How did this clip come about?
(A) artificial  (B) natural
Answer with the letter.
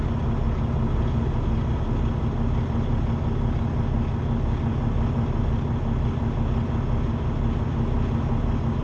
B